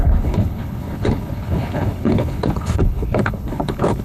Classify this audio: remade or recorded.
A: remade